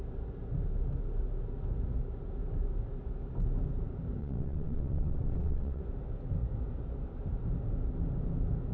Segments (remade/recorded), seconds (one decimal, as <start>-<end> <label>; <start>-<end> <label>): 0.0-4.2 recorded; 4.2-5.8 remade; 5.8-8.7 recorded